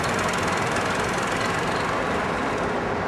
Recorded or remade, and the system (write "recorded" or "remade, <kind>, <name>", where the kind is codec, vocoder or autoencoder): recorded